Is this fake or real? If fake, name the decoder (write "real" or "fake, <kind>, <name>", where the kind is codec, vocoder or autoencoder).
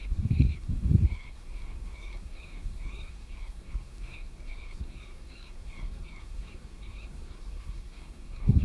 fake, codec, SNAC